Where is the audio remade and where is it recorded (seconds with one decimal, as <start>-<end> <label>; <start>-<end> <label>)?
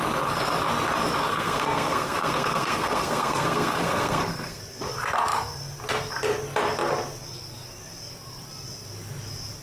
0.0-1.3 recorded; 1.3-4.6 remade; 4.6-9.6 recorded